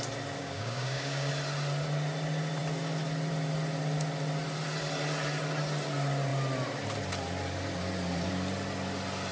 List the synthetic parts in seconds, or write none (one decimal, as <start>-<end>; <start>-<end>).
0.4-1.3